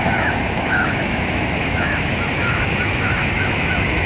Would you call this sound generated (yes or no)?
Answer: yes